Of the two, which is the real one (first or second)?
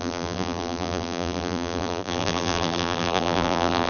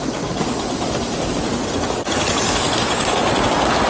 second